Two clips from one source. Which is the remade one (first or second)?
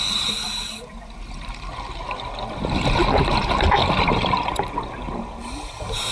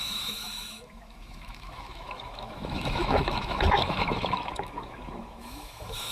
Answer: second